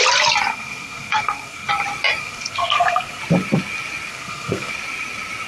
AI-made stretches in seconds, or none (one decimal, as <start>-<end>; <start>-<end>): 0.5-1.7; 2.2-3.2; 4.1-4.7